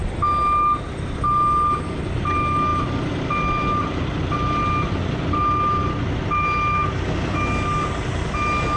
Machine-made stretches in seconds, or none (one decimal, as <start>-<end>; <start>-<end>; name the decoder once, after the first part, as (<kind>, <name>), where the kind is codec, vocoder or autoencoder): none